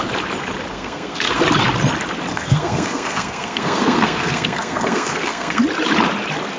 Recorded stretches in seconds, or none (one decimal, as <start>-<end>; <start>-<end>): 0.0-0.7; 1.4-2.3; 5.6-6.6

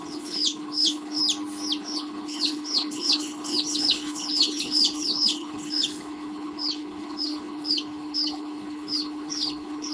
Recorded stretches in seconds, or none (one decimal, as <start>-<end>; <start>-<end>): 1.2-1.8